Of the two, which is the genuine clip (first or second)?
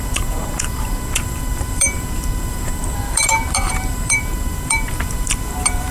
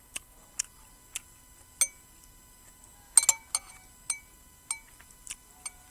second